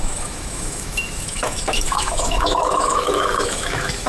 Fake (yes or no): yes